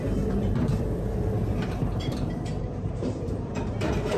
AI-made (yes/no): yes